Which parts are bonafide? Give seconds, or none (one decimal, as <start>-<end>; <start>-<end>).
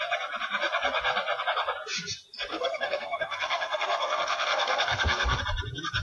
0.0-2.5; 5.4-6.0